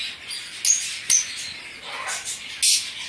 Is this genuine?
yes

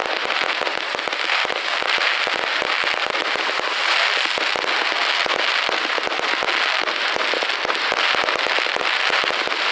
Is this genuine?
yes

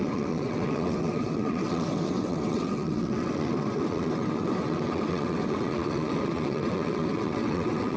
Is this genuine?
no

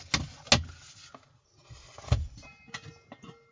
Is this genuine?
yes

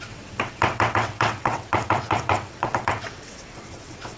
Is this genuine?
no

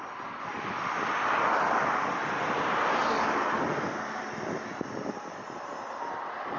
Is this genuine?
yes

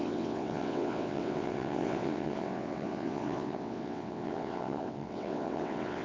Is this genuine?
no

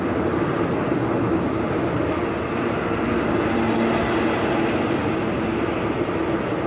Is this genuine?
yes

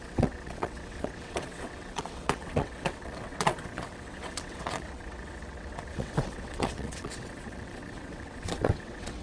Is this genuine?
no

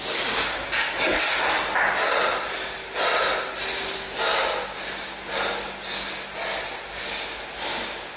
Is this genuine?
yes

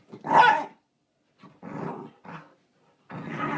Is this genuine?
yes